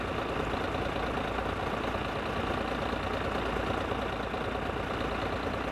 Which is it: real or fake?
real